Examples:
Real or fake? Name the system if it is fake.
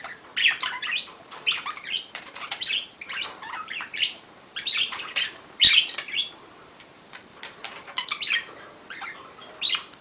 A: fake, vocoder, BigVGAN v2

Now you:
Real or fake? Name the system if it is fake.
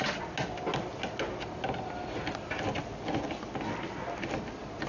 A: real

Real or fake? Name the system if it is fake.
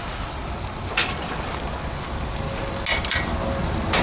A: real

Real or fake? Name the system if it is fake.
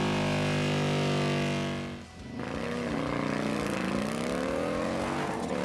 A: real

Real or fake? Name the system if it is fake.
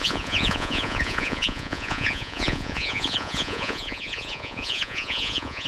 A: fake, vocoder, Vocos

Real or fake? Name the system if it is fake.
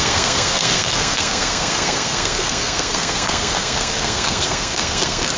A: fake, codec, SNAC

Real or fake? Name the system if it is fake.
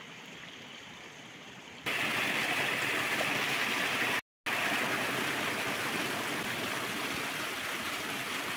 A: real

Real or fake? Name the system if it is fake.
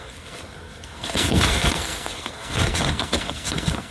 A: fake, codec, SNAC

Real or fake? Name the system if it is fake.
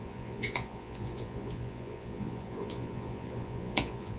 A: fake, vocoder, Vocos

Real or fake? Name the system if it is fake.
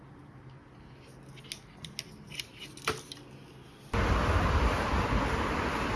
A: real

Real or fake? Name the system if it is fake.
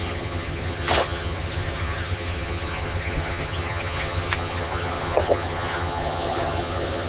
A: fake, vocoder, HiFi-GAN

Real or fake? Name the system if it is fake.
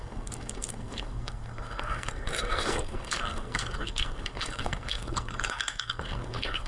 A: fake, codec, SNAC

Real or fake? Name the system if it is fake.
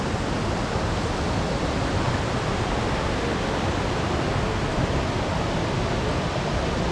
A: real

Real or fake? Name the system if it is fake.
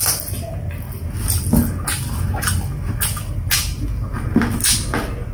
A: real